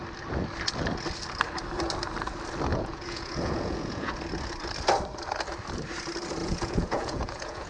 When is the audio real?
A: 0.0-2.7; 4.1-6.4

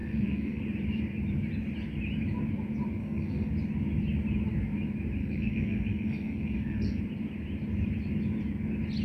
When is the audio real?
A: 0.6-3.0; 3.5-5.2; 7.0-9.0

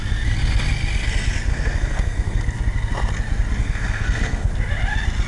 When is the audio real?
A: 0.0-1.5; 2.4-3.6; 4.5-5.3

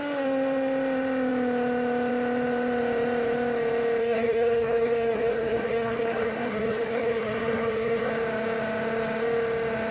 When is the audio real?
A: 0.0-4.0; 8.1-9.9

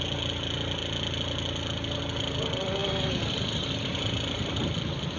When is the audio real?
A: 0.0-5.2

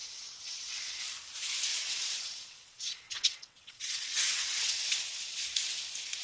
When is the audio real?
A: 1.0-1.7; 5.4-6.2

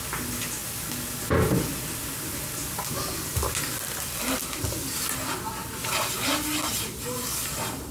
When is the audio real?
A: 0.0-7.9

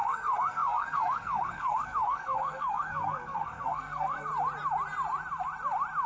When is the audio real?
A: 4.3-6.1